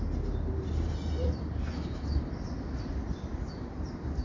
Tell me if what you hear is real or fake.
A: real